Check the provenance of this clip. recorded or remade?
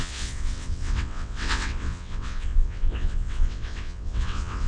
remade